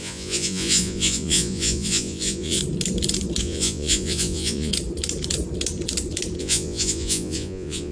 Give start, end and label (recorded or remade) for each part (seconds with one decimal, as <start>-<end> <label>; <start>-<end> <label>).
0.0-2.6 remade; 2.6-3.4 recorded; 3.4-4.7 remade; 4.7-6.4 recorded; 6.4-7.9 remade